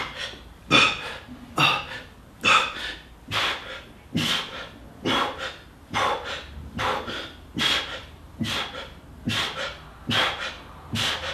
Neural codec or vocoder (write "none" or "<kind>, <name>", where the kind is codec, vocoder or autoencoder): none